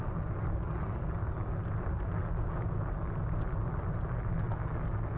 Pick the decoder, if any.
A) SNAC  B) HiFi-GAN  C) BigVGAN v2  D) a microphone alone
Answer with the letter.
D